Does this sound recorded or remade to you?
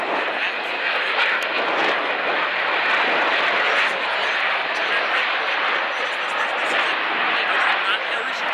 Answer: recorded